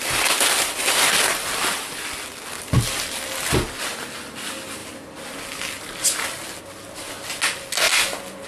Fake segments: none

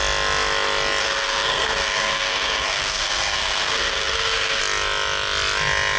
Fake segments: 1.0-4.6 (codec, SNAC)